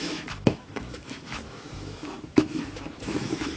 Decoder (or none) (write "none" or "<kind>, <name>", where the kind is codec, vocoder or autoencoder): autoencoder, DAC-VAE